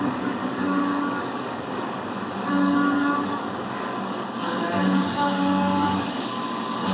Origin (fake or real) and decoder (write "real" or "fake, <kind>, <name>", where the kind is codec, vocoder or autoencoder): fake, codec, DAC